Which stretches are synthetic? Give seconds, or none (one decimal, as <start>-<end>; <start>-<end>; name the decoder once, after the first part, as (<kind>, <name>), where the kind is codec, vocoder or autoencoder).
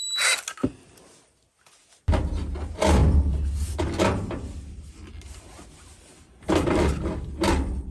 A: none